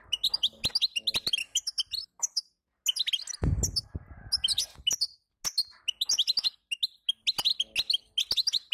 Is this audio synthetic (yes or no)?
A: no